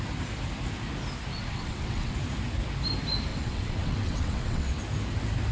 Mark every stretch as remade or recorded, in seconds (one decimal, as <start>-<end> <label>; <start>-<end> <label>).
0.0-1.3 recorded; 1.3-2.1 remade; 2.1-3.3 recorded; 3.3-4.8 remade; 4.8-5.5 recorded